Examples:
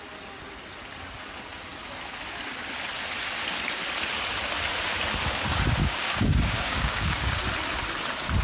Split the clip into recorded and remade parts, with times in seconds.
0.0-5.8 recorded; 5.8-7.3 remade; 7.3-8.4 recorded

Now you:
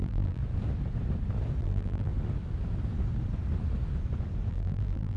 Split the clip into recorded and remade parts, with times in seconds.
0.0-0.4 remade; 0.4-1.6 recorded; 1.6-2.1 remade; 2.1-4.5 recorded; 4.5-5.2 remade

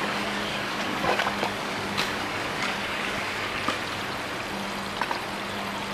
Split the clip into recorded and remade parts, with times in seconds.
0.0-3.5 remade; 3.5-5.9 recorded

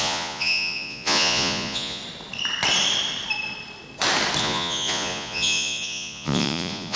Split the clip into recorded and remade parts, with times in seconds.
0.0-2.0 remade; 2.0-4.4 recorded; 4.4-7.0 remade